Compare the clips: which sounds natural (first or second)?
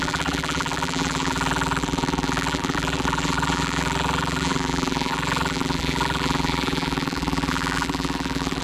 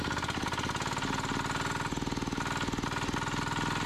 second